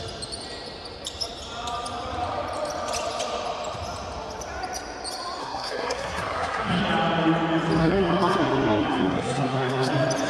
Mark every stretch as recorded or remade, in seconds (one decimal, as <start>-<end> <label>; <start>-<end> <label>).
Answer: 0.0-5.4 recorded; 5.4-6.8 remade; 6.8-7.8 recorded; 7.8-9.9 remade; 9.9-10.3 recorded